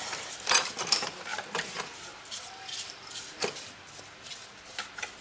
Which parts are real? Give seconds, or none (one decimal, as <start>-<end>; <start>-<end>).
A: 0.0-1.3; 3.9-5.2